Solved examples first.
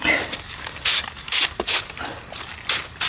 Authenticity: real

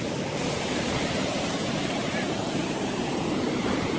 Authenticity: real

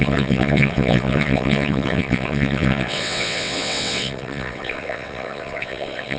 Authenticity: fake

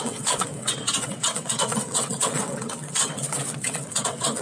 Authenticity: fake